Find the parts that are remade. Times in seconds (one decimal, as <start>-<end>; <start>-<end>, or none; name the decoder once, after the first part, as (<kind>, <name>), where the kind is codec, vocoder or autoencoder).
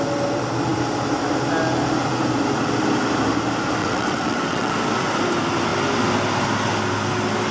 3.8-4.7 (vocoder, WaveNeXt)